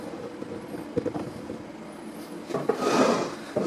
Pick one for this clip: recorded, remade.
recorded